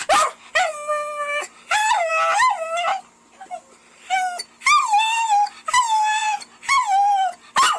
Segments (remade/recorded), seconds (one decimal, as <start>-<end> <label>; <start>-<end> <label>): 0.0-6.2 recorded; 6.2-6.7 remade; 6.7-7.8 recorded